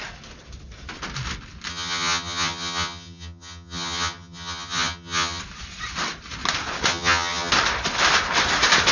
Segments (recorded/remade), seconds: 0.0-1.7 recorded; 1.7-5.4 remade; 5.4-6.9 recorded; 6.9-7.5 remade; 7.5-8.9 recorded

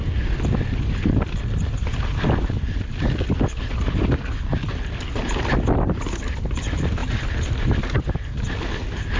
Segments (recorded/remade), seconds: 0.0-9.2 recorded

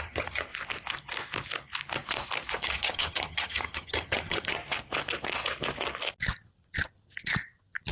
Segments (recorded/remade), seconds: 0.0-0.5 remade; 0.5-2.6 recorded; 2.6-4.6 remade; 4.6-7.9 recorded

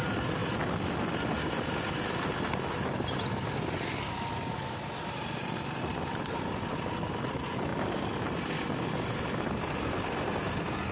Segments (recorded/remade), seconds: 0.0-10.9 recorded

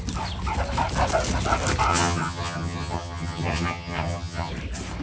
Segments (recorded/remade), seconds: 0.0-1.9 recorded; 1.9-4.5 remade; 4.5-5.0 recorded